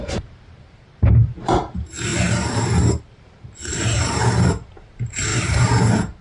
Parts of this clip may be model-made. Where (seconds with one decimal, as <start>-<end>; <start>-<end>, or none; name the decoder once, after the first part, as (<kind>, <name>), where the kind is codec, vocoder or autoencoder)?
0.0-6.2 (vocoder, BigVGAN v2)